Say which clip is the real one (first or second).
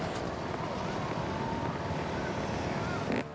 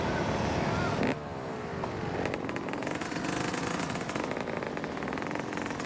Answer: second